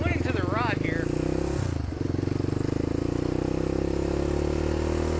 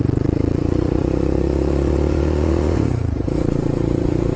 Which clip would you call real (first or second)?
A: first